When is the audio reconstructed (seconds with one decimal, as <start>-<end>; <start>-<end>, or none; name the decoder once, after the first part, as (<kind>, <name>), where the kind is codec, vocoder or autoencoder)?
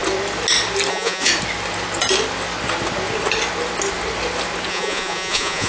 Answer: 0.9-1.3 (vocoder, Vocos); 4.7-5.7